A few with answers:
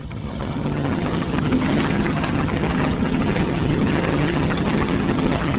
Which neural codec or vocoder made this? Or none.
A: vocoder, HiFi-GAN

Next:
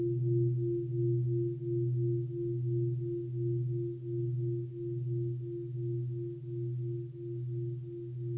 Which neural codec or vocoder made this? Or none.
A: none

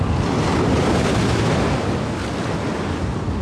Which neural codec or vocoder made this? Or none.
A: none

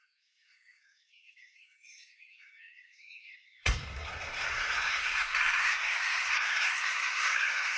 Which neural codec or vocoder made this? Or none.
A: codec, SNAC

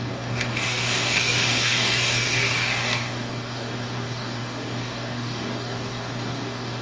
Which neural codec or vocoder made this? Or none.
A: codec, DAC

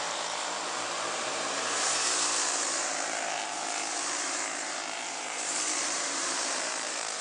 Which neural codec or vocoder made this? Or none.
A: vocoder, BigVGAN v2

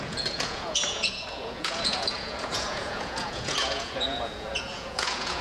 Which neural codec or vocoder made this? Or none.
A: vocoder, Vocos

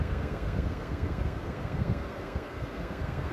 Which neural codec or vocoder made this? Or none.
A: codec, SNAC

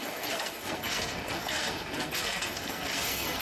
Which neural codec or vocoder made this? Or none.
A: codec, SNAC